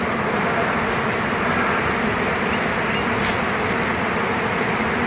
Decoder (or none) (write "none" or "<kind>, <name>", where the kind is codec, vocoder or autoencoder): none